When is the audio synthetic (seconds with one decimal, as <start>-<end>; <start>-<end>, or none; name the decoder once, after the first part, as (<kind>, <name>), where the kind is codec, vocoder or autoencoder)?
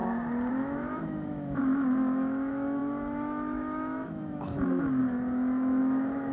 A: 0.5-5.0 (autoencoder, DAC-VAE); 5.8-6.3